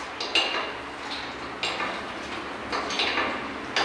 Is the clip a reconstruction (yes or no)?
no